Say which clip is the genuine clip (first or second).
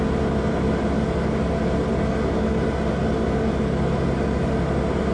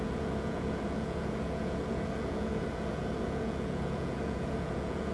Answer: first